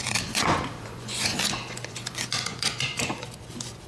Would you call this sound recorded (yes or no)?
no